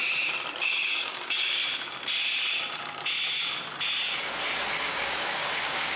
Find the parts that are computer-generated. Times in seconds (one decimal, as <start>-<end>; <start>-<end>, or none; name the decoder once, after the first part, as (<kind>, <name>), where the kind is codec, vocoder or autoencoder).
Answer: 0.6-1.6 (codec, DAC); 4.9-6.0